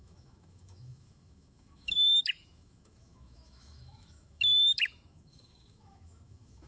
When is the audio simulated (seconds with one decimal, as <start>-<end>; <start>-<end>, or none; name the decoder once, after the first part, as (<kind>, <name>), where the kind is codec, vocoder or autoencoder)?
0.0-6.7 (autoencoder, DAC-VAE)